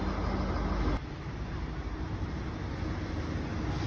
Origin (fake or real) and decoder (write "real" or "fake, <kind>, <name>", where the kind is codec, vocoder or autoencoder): real